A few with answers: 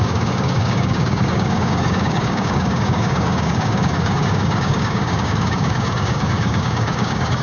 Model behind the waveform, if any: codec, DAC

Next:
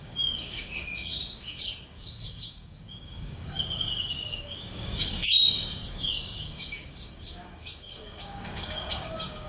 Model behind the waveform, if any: codec, DAC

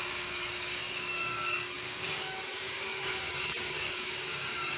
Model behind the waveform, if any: codec, DAC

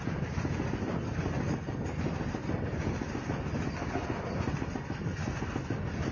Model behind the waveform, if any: none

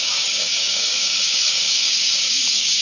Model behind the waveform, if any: codec, DAC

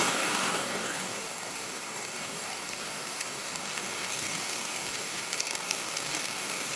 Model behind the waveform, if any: codec, DAC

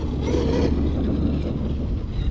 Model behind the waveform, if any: none